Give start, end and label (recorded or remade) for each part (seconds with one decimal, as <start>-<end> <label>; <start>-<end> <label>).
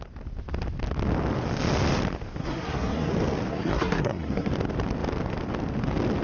0.0-2.4 recorded; 2.4-3.1 remade; 3.1-3.5 recorded; 3.5-4.5 remade; 4.5-6.2 recorded